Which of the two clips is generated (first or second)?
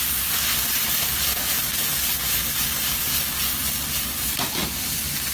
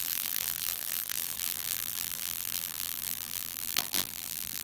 second